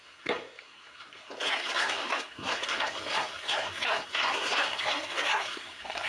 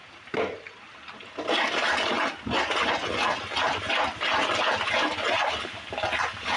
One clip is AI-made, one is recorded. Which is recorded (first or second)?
second